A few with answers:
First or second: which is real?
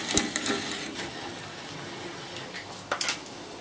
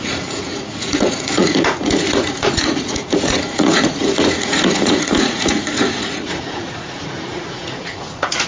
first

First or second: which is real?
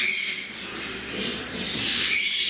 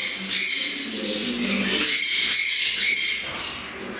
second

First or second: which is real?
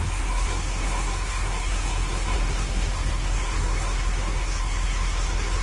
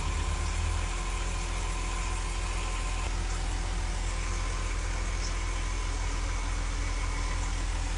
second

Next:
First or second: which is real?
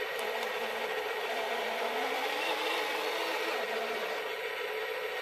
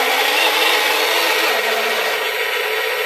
second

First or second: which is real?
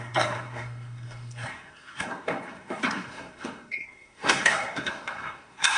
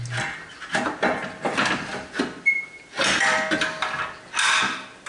second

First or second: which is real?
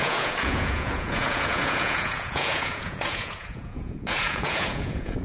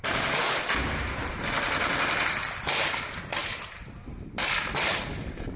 second